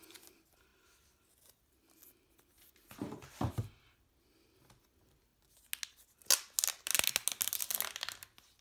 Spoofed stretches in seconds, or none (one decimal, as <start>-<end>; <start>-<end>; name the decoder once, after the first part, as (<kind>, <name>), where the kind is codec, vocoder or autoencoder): none